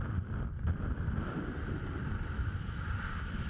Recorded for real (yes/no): no